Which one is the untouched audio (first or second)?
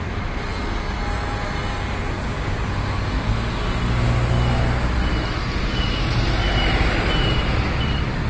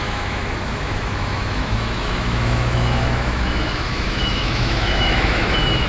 first